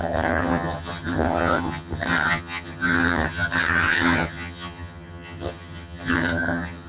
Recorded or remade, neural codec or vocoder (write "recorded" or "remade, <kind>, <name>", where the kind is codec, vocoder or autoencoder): remade, vocoder, HiFi-GAN